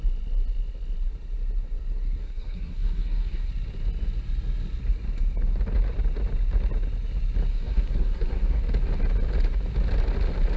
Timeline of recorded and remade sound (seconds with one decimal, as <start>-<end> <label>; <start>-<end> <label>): 0.0-2.2 recorded; 2.2-3.5 remade; 3.5-7.5 recorded; 7.5-8.6 remade; 8.6-10.6 recorded